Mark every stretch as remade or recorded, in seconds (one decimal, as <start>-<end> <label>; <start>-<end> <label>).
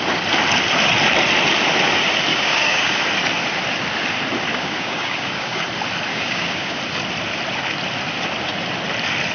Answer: 0.0-2.3 recorded; 2.3-3.0 remade; 3.0-4.5 recorded; 4.5-5.6 remade; 5.6-6.1 recorded; 6.1-6.8 remade; 6.8-9.3 recorded